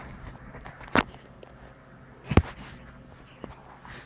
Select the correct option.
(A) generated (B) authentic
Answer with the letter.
B